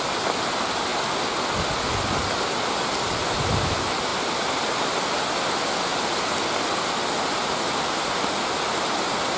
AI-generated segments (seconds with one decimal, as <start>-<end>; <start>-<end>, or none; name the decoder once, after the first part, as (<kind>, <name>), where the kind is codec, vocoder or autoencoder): none